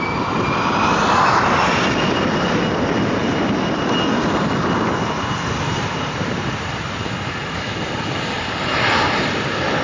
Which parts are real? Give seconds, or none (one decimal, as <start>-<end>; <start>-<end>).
0.0-9.8